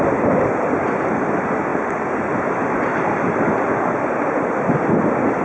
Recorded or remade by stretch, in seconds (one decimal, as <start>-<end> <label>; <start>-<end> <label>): 0.0-5.4 recorded

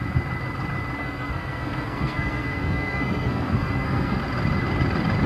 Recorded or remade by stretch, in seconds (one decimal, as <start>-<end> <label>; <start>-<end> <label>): 0.0-1.0 recorded; 1.0-4.2 remade; 4.2-5.3 recorded

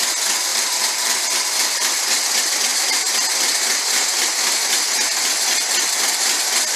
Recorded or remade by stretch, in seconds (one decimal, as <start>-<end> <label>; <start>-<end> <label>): 0.0-0.5 recorded; 0.5-1.4 remade; 1.4-6.8 recorded

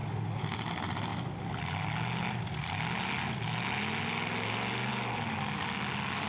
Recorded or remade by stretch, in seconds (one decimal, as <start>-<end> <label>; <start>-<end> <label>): 0.0-6.3 recorded

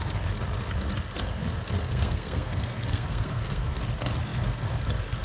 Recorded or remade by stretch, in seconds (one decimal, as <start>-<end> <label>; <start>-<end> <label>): 0.0-1.9 recorded; 1.9-3.8 remade; 3.8-5.2 recorded

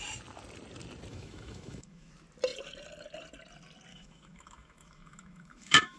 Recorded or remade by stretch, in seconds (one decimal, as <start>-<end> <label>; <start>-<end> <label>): 0.0-1.1 recorded; 1.1-2.1 remade; 2.1-3.9 recorded; 3.9-6.0 remade

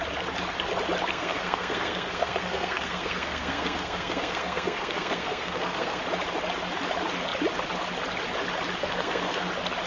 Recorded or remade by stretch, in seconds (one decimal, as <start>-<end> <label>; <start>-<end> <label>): 0.0-1.1 recorded; 1.1-6.0 remade; 6.0-8.8 recorded; 8.8-9.5 remade; 9.5-9.9 recorded

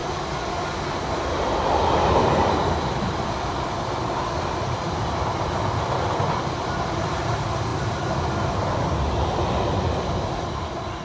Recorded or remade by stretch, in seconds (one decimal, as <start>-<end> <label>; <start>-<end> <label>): 0.0-1.3 recorded; 1.3-11.0 remade